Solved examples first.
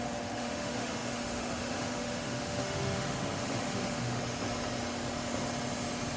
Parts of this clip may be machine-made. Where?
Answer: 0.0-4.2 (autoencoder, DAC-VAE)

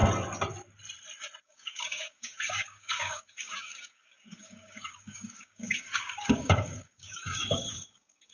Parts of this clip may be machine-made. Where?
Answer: 1.4-8.3 (codec, DAC)